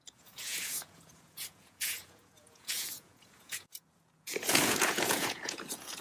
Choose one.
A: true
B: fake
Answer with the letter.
B